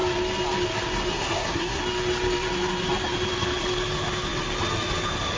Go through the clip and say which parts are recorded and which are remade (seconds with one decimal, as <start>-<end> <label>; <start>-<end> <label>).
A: 0.0-1.1 recorded; 1.1-1.8 remade; 1.8-5.4 recorded